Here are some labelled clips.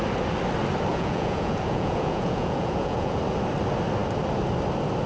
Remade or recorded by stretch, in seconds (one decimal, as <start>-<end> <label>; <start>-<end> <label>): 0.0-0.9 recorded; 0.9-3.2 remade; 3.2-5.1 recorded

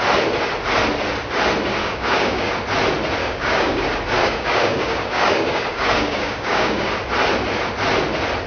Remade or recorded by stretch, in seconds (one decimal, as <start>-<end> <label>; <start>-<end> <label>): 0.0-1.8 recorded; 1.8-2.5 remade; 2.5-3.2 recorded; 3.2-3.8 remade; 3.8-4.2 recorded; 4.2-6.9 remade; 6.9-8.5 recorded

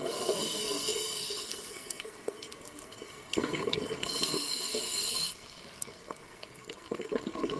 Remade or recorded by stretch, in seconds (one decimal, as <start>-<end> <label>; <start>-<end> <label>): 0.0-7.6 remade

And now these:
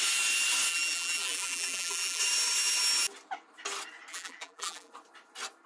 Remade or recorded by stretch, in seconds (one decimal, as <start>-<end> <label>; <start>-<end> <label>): 0.0-0.7 recorded; 0.7-2.2 remade; 2.2-4.1 recorded; 4.1-4.9 remade; 4.9-5.7 recorded

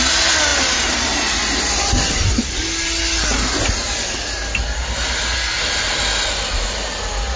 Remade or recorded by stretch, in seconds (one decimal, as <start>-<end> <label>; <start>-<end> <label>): 0.0-7.4 recorded